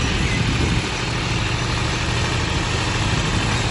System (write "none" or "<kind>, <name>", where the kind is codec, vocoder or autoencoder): none